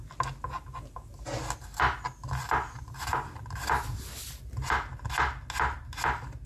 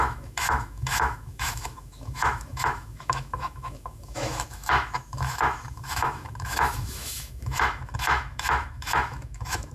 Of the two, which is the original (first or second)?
first